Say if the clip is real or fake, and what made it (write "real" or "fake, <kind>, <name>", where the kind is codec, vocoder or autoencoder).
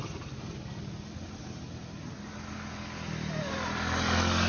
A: real